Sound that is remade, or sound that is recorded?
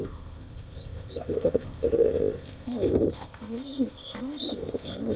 remade